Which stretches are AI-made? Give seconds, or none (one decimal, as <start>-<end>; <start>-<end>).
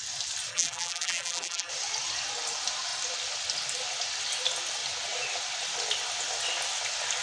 0.5-1.7